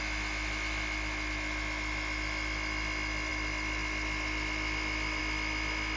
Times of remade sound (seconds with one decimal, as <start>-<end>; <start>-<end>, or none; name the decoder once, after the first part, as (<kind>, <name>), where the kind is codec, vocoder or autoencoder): 3.3-5.2 (vocoder, BigVGAN v2)